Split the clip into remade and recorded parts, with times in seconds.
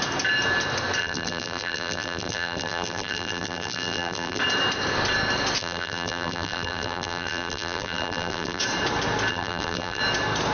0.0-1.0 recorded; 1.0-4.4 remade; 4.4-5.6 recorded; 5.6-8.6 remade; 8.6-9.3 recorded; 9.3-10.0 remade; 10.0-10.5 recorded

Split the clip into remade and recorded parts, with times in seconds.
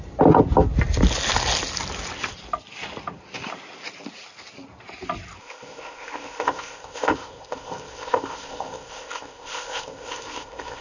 0.0-5.4 recorded; 5.4-10.8 remade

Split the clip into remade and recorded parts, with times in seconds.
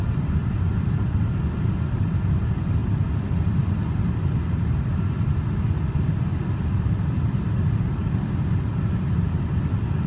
0.0-10.1 recorded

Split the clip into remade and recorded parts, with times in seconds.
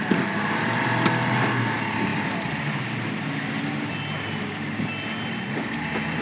0.0-6.2 recorded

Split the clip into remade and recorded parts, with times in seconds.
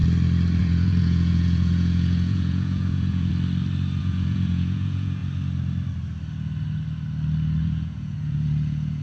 0.0-0.6 recorded; 0.6-3.3 remade; 3.3-4.0 recorded; 4.0-5.2 remade; 5.2-7.6 recorded; 7.6-9.0 remade